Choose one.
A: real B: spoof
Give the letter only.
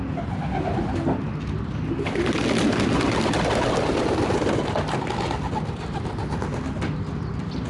A